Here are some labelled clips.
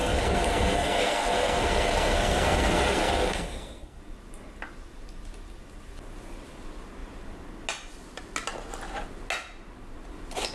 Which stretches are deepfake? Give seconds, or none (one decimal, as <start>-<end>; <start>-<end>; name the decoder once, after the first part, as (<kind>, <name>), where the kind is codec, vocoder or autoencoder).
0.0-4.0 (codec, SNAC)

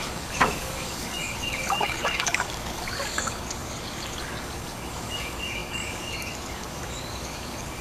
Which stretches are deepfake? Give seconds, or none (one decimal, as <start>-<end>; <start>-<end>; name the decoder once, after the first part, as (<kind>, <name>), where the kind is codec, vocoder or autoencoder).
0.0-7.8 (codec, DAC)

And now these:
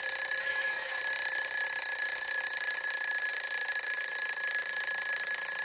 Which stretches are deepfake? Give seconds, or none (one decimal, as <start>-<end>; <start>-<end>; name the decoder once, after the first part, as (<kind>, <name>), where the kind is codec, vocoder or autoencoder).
0.4-1.0 (codec, DAC)

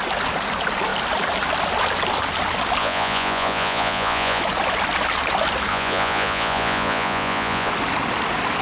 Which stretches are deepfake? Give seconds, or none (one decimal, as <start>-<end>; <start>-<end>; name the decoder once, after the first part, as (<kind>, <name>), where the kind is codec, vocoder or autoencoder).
2.8-4.4 (vocoder, Vocos); 5.7-7.7